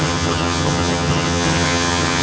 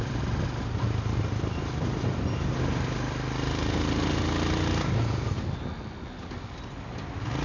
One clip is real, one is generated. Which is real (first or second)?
second